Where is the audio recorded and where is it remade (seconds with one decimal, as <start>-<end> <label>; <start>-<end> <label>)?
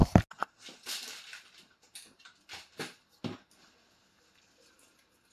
0.0-5.3 recorded